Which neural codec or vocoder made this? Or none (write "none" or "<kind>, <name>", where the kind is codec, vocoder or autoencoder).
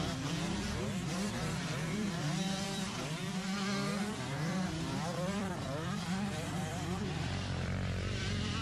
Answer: vocoder, BigVGAN v2